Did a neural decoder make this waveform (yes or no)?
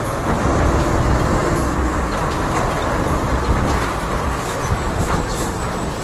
no